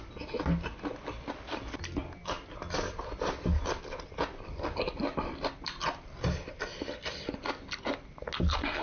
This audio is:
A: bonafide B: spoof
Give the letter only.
A